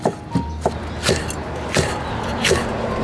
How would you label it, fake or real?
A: real